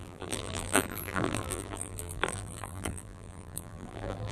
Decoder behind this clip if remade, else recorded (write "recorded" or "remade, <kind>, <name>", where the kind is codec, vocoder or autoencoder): remade, vocoder, BigVGAN v2